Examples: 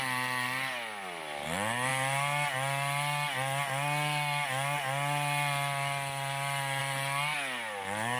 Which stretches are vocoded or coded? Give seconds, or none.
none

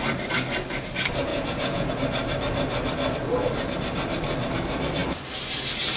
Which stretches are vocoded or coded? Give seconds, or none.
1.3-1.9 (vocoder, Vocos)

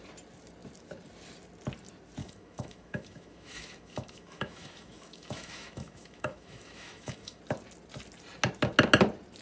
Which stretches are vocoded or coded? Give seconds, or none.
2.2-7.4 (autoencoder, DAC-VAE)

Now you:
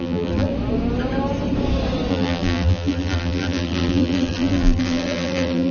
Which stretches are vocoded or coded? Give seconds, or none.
0.0-0.5 (vocoder, BigVGAN v2); 2.1-5.7

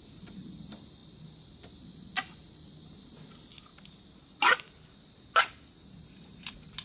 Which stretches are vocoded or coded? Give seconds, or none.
none

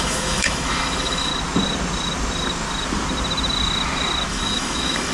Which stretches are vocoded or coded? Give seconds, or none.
0.0-1.3 (autoencoder, DAC-VAE); 4.3-5.1

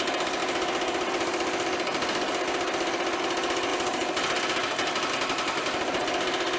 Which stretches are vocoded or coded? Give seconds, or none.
none

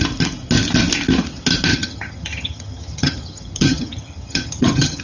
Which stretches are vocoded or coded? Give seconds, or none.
1.7-5.0 (vocoder, HiFi-GAN)